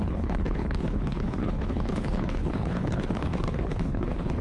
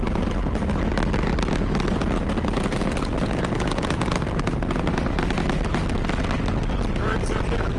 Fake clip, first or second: first